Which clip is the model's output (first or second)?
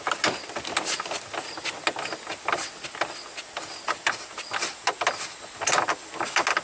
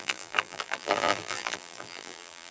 second